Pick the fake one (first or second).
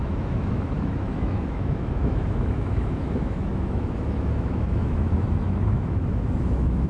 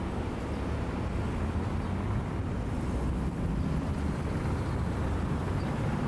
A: first